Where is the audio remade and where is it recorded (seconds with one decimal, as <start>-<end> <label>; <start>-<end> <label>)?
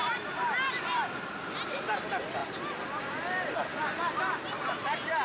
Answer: 0.0-1.2 remade; 1.2-3.7 recorded; 3.7-4.7 remade; 4.7-5.2 recorded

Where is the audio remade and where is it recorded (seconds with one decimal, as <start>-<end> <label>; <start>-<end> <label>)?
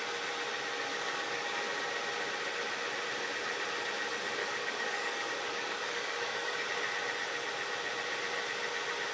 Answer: 0.0-0.9 recorded; 0.9-1.5 remade; 1.5-4.4 recorded; 4.4-6.7 remade; 6.7-9.1 recorded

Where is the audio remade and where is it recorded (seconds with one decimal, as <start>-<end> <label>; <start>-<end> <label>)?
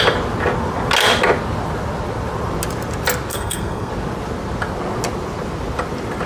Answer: 0.0-3.3 recorded; 3.3-3.9 remade; 3.9-6.3 recorded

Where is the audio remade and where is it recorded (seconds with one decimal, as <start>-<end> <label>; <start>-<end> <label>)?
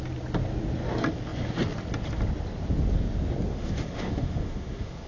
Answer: 0.0-3.5 recorded; 3.5-5.1 remade